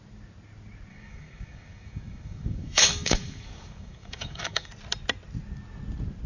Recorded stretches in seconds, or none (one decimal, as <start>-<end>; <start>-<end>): 0.0-0.9; 4.7-6.3